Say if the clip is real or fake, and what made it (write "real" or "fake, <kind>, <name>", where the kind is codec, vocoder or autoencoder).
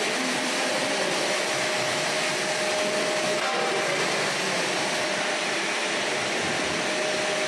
real